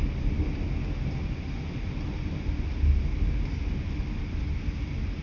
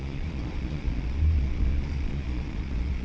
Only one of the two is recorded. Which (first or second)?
first